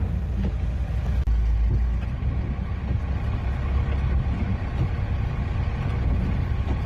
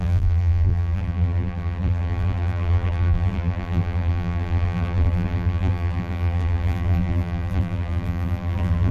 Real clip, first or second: first